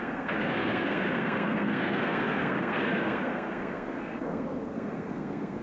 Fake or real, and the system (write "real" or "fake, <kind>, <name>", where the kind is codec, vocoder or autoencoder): fake, codec, SNAC